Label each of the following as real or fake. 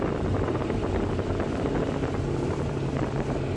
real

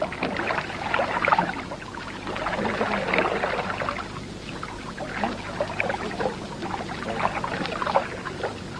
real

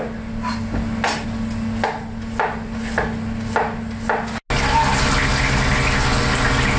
real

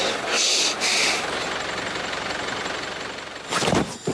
real